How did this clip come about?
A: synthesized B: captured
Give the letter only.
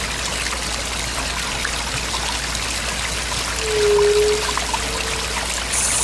B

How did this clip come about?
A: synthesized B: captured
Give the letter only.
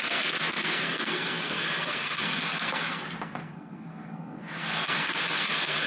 A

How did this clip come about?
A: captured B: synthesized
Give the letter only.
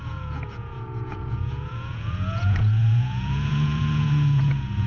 B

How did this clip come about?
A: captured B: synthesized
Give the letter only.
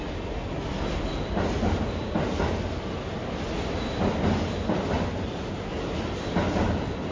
A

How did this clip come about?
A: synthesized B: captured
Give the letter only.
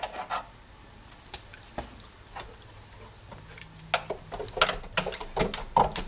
B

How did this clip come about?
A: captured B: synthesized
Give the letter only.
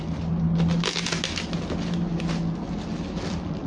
A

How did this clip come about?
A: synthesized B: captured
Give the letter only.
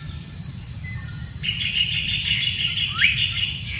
A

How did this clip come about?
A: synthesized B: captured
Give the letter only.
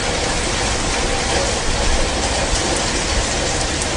B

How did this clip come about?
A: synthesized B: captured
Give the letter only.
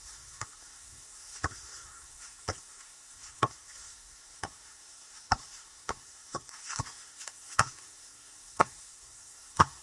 A